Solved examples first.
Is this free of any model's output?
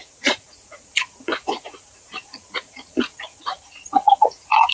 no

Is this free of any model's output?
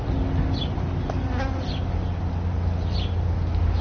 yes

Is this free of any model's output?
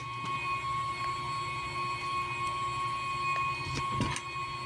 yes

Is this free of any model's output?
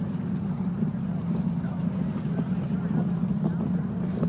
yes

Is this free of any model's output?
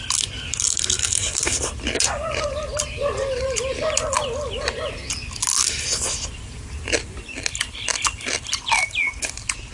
yes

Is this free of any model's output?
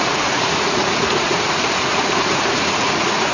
no